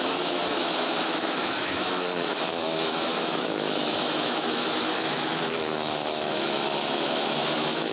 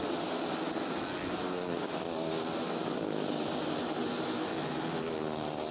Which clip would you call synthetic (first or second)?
first